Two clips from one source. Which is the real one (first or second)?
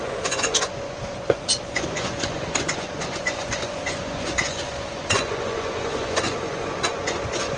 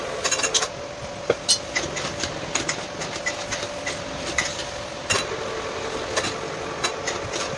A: second